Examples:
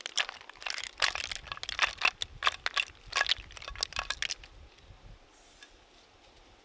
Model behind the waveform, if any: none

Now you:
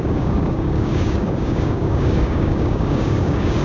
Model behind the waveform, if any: codec, DAC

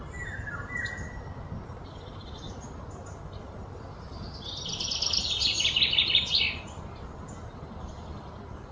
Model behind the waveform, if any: none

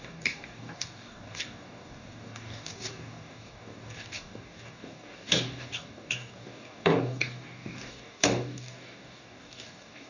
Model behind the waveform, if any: codec, DAC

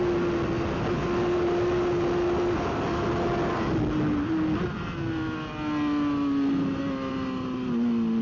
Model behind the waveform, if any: none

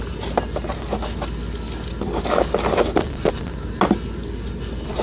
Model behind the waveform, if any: none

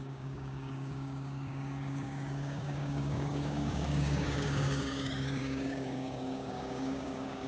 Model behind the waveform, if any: codec, DAC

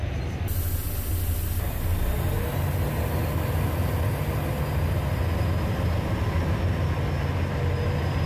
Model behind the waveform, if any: none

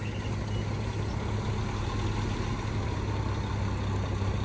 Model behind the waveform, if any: none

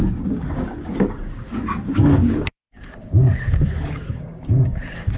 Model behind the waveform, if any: codec, DAC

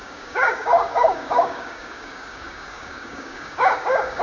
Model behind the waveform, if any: codec, DAC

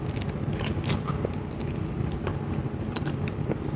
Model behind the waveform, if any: none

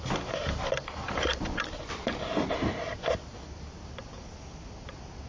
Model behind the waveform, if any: none